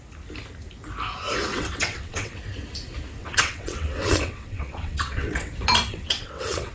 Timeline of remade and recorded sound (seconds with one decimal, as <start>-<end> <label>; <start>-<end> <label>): 0.0-1.5 recorded; 1.5-2.4 remade; 2.4-3.2 recorded; 3.2-5.5 remade; 5.5-5.9 recorded; 5.9-6.7 remade